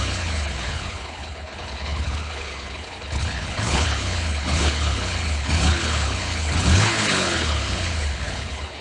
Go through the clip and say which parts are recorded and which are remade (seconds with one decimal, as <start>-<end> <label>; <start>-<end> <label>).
0.0-8.8 remade